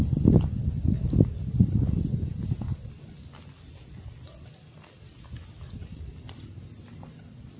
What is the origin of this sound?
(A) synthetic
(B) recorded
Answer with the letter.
B